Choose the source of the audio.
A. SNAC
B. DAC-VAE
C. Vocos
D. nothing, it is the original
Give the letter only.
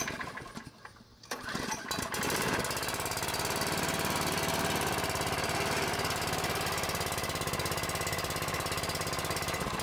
D